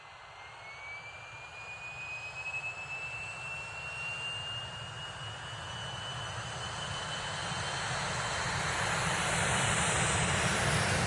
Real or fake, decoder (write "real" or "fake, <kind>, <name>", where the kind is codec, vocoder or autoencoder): real